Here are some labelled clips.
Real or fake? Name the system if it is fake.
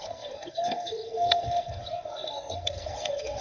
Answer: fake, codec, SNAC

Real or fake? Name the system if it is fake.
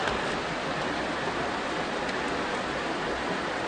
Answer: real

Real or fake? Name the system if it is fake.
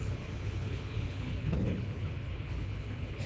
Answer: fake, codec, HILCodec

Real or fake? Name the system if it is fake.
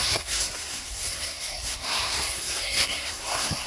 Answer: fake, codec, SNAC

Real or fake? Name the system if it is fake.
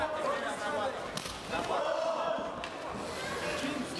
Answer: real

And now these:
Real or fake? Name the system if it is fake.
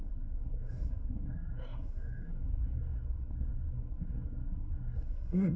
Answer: fake, codec, SNAC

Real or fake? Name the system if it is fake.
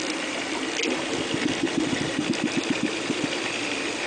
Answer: real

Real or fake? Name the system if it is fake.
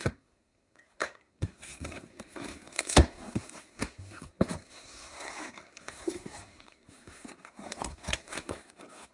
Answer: fake, codec, SNAC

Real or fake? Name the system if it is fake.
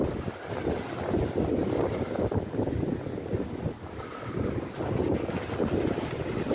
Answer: real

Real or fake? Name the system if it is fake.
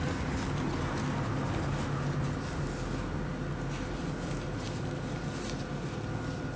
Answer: real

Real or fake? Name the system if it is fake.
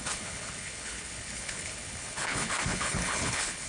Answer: fake, codec, HILCodec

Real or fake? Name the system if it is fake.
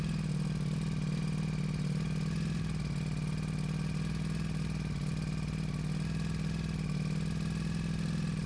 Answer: real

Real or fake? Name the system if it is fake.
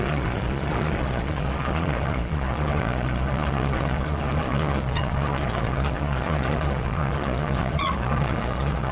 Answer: fake, vocoder, Vocos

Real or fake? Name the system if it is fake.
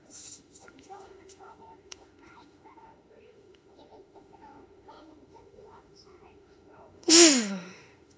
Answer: fake, autoencoder, DAC-VAE